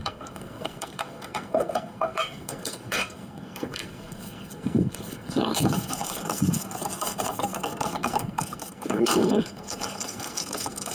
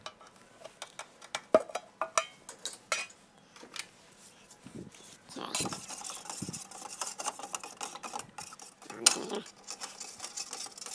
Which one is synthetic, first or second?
first